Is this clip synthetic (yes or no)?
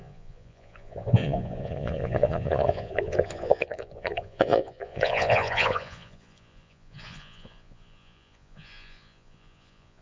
yes